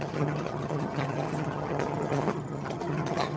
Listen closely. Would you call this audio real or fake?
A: fake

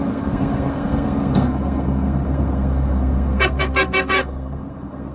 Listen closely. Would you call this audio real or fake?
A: fake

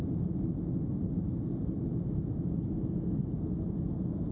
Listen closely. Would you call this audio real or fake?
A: real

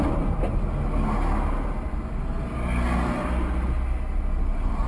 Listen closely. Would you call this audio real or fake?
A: real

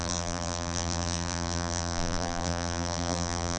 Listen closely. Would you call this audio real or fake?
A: fake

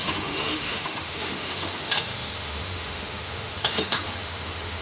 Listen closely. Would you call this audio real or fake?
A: fake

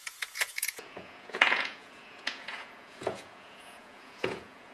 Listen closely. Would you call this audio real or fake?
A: fake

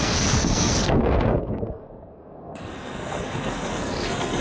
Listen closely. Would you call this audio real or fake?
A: fake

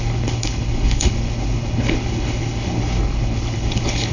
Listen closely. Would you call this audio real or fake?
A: fake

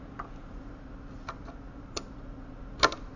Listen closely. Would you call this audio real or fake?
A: real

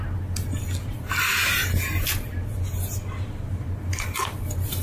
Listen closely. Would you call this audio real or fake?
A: real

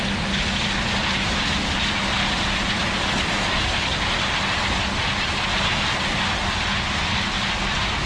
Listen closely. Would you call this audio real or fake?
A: real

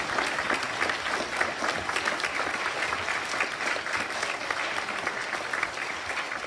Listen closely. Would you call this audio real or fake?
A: real